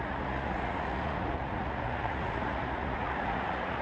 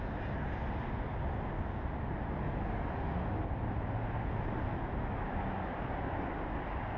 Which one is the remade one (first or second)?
first